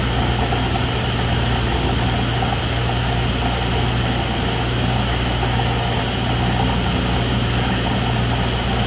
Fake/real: real